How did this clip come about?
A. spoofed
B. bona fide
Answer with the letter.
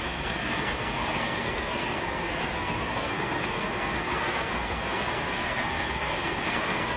A